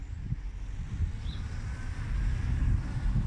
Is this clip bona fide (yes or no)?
yes